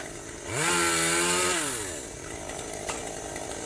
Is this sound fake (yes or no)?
no